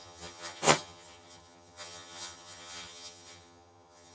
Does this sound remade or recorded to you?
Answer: remade